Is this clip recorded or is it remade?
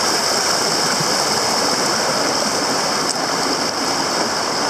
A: recorded